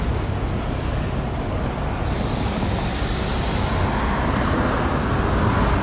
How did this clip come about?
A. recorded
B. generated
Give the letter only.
A